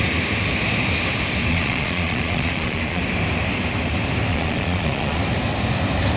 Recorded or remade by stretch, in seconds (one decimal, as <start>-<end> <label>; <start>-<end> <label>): 0.0-1.5 recorded; 1.5-3.0 remade; 3.0-4.3 recorded; 4.3-5.2 remade; 5.2-6.2 recorded